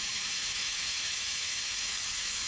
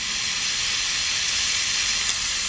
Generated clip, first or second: first